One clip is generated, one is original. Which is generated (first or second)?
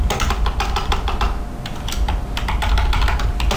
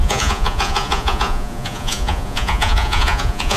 second